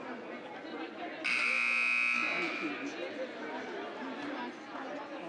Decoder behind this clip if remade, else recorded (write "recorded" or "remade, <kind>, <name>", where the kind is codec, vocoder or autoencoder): recorded